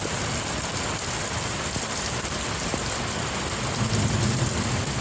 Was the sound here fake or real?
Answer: real